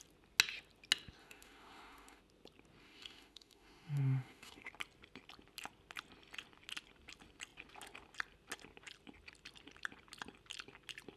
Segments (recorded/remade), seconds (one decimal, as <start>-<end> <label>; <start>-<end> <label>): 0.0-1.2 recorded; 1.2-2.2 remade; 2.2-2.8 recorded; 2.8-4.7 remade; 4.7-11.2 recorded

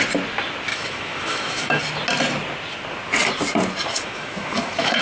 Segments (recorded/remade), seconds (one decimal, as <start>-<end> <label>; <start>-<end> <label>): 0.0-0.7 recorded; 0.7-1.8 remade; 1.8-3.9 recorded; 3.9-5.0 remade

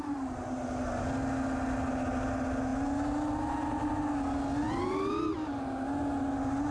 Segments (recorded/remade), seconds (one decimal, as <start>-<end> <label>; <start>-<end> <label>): 0.0-6.7 recorded